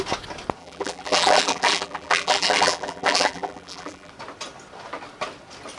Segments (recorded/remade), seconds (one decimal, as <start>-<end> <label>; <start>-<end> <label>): 0.0-0.6 recorded; 0.6-4.1 remade; 4.1-5.8 recorded